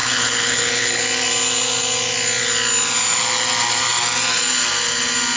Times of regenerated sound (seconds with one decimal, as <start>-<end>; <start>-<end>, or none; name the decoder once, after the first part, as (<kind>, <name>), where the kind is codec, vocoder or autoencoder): 0.0-1.0 (codec, HILCodec)

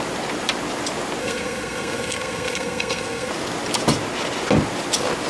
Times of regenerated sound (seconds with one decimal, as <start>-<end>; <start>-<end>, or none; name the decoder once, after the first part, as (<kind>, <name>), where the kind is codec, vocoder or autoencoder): 1.2-3.3 (codec, SNAC)

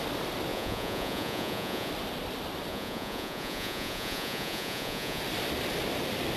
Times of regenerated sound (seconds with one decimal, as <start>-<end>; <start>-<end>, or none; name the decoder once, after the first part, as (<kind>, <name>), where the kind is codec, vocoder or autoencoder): 0.5-1.9 (vocoder, Vocos); 2.7-5.2

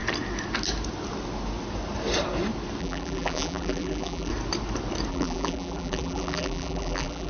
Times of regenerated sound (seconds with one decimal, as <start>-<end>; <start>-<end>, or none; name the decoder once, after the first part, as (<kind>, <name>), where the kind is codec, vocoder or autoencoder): 2.8-4.3 (vocoder, BigVGAN v2); 5.1-7.3

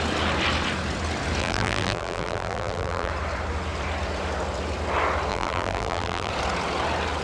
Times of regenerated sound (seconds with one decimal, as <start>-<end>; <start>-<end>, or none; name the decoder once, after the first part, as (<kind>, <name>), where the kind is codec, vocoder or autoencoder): 1.4-3.1 (vocoder, BigVGAN v2); 5.3-6.3

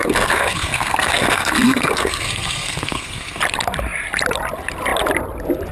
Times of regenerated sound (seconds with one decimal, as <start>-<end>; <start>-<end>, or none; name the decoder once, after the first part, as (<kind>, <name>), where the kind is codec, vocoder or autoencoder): 0.0-3.4 (codec, SNAC)